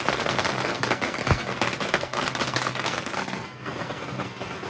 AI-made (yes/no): yes